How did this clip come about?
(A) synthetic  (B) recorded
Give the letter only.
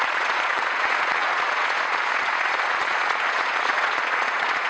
A